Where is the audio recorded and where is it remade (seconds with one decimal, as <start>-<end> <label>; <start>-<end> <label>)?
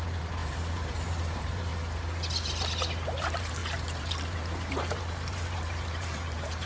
0.0-1.7 remade; 1.7-3.2 recorded; 3.2-6.7 remade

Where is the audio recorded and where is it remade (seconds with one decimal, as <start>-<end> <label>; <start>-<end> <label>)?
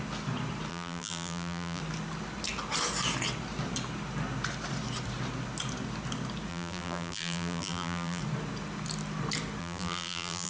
0.0-0.7 recorded; 0.7-1.8 remade; 1.8-6.5 recorded; 6.5-8.2 remade; 8.2-9.6 recorded; 9.6-10.5 remade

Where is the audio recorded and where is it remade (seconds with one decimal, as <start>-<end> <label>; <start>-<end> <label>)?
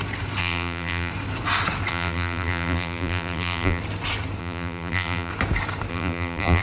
0.0-0.4 recorded; 0.4-1.1 remade; 1.1-1.9 recorded; 1.9-3.8 remade; 3.8-4.4 recorded; 4.4-5.3 remade; 5.3-5.9 recorded; 5.9-6.6 remade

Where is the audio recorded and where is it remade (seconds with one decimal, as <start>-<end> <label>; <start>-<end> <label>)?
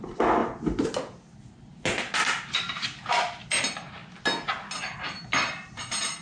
0.0-6.2 recorded